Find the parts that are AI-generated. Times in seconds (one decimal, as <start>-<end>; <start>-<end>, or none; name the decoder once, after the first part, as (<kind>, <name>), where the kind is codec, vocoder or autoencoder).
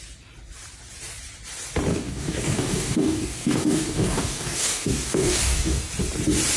1.9-5.9 (codec, DAC)